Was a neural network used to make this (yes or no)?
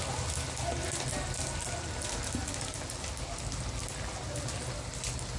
no